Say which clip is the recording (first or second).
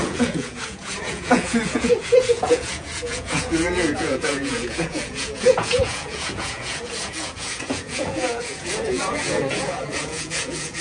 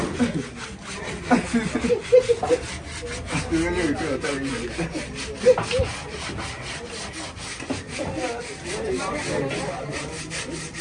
second